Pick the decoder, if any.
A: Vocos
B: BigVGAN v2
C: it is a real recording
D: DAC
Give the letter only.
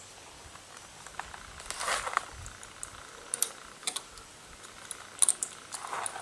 C